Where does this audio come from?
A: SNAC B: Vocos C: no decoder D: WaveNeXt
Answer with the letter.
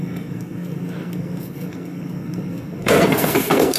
A